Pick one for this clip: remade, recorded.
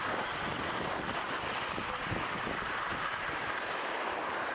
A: recorded